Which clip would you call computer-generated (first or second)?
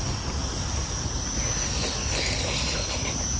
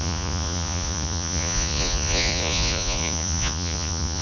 second